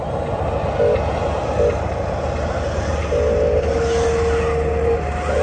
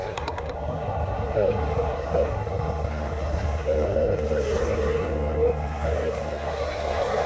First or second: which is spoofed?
second